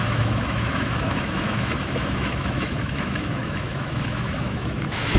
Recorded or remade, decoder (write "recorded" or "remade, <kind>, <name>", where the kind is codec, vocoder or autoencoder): remade, autoencoder, DAC-VAE